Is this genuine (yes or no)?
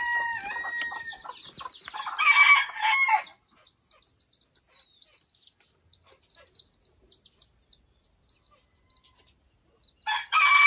yes